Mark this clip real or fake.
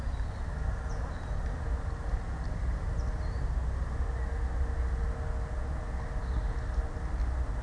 real